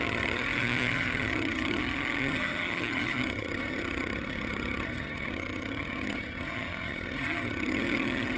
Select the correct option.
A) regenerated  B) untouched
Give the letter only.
A